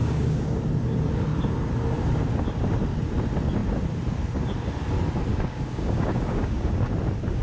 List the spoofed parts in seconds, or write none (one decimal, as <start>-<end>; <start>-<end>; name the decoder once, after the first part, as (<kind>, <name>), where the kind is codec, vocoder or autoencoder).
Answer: 0.0-0.6 (codec, DAC); 5.3-6.9